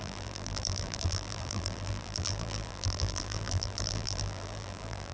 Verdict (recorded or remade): remade